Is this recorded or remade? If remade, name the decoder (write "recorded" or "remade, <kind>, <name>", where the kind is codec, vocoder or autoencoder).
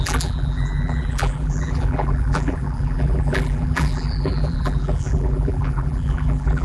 remade, vocoder, BigVGAN v2